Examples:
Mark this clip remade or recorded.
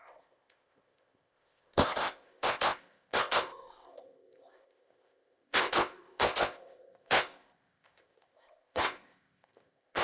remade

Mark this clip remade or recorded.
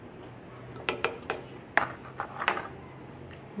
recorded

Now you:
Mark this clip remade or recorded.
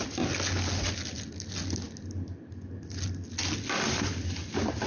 recorded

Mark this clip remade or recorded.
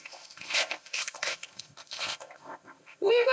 remade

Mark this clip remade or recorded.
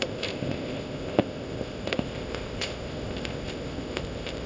remade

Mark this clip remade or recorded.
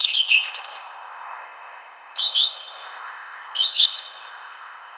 remade